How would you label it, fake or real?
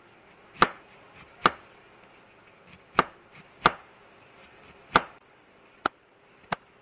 real